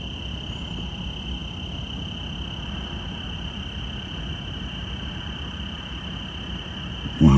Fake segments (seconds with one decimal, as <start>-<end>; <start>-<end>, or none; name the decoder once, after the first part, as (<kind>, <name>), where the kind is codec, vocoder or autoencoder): none